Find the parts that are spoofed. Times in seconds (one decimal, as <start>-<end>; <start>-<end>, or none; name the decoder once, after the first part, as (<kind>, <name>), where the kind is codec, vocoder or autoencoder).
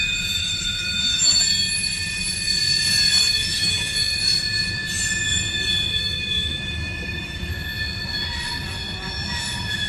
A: 0.4-1.4 (autoencoder, DAC-VAE); 3.2-4.2; 5.9-7.5